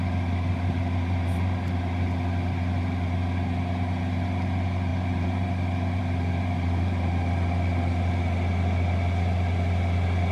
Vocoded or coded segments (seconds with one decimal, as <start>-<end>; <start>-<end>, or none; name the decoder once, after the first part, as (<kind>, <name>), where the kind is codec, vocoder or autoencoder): none